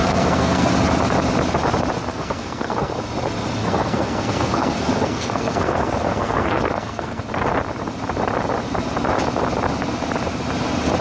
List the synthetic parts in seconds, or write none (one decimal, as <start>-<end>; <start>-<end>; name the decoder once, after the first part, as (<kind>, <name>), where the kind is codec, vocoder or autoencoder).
0.0-0.7 (codec, SNAC); 2.1-2.9; 3.6-7.2